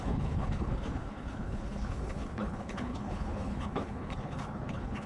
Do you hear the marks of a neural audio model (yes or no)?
yes